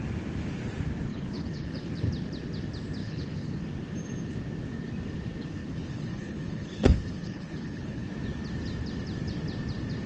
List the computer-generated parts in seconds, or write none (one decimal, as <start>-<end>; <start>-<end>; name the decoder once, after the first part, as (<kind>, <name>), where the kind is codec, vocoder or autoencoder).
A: 1.1-2.1 (codec, HILCodec); 3.0-3.6; 5.6-8.1